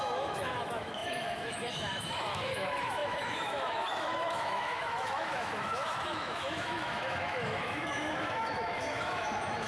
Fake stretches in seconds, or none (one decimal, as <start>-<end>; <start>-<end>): 0.0-9.7